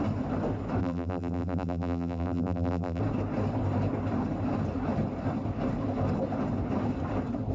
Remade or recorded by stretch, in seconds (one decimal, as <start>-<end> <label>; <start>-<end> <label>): 0.0-0.8 recorded; 0.8-3.0 remade; 3.0-7.5 recorded